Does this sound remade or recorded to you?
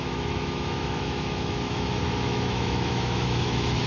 remade